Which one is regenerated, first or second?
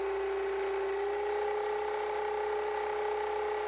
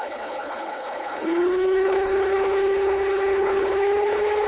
second